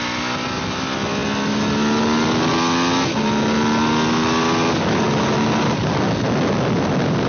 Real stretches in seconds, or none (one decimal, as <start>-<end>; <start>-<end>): 0.0-7.3